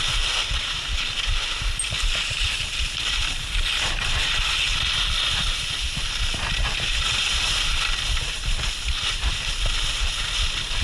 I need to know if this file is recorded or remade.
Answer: recorded